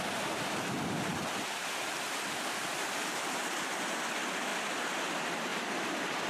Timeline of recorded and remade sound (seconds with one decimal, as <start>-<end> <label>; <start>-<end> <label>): 0.0-6.3 recorded